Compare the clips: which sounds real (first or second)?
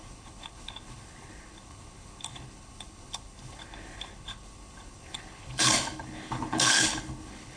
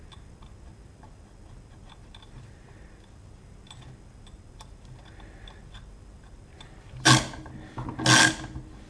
second